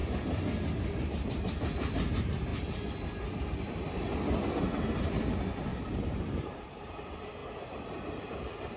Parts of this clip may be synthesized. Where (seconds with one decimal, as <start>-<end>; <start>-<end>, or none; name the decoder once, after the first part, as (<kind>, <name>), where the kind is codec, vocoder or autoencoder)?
5.7-7.0 (vocoder, BigVGAN v2)